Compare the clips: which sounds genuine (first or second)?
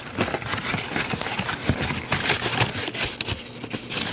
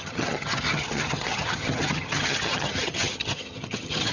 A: first